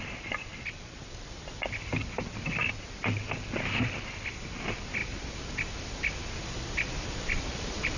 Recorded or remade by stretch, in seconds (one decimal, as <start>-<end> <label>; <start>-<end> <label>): 0.0-5.0 remade; 5.0-7.1 recorded; 7.1-8.0 remade